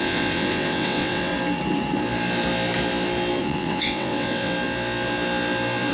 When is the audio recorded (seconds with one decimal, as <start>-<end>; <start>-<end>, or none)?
1.3-3.4; 4.5-5.9